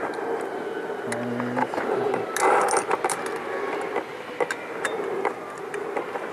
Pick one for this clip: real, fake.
real